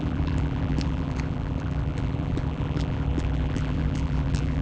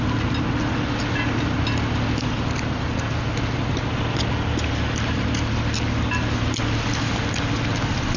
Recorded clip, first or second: second